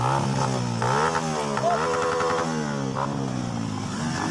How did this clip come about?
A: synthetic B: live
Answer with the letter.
B